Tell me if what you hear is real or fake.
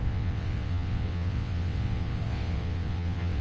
fake